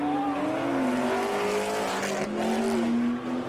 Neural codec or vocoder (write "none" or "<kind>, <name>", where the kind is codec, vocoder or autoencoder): none